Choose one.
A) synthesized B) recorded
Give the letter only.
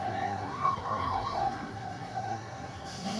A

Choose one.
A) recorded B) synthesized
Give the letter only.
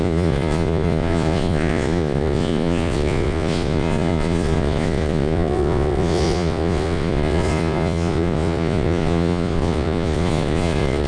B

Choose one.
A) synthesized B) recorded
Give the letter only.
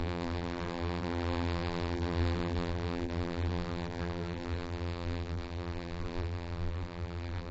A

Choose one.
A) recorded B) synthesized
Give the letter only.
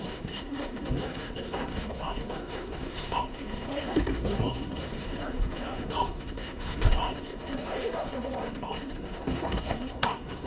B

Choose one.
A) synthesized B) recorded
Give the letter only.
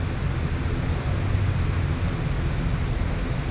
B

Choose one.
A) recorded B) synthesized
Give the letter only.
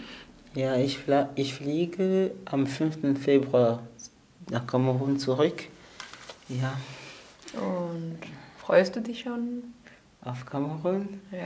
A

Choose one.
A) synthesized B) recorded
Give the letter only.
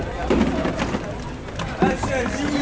B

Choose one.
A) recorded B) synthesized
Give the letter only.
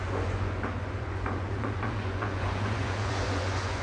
B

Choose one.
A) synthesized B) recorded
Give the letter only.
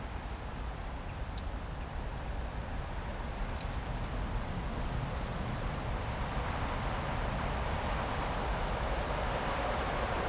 B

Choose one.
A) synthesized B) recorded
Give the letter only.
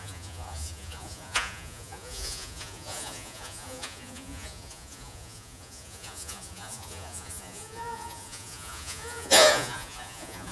A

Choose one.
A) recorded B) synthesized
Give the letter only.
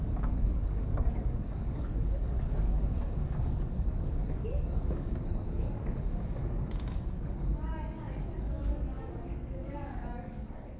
B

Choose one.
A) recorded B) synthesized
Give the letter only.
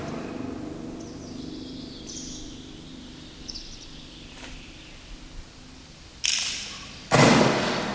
A